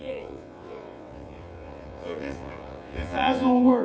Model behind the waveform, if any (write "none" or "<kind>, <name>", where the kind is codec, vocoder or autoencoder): vocoder, WaveNeXt